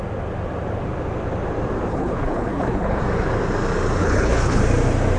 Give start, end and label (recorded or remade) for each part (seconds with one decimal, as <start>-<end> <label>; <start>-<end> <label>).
0.0-1.9 recorded; 1.9-3.0 remade; 3.0-4.0 recorded; 4.0-4.6 remade; 4.6-5.2 recorded